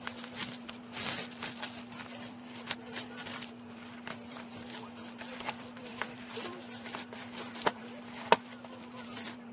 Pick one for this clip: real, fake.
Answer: fake